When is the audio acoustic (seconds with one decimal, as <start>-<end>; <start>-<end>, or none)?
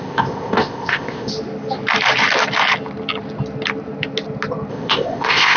1.3-4.7